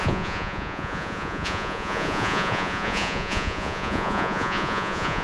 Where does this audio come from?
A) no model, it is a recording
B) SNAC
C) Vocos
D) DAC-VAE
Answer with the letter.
C